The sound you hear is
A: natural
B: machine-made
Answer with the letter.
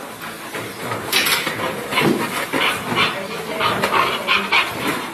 A